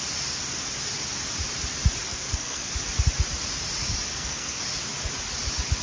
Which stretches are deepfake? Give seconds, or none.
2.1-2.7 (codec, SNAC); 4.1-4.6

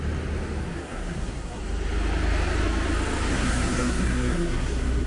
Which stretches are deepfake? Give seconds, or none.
0.7-1.6 (codec, SNAC); 3.3-5.1

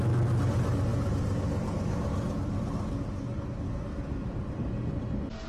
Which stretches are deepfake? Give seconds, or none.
none